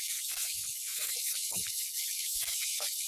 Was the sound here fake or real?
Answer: fake